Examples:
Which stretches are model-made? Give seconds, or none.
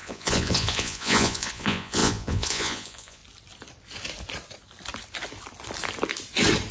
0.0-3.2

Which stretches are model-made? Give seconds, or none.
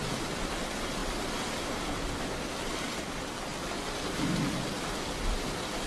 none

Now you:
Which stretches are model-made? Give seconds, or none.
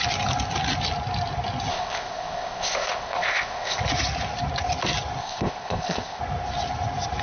1.7-3.8; 5.2-6.2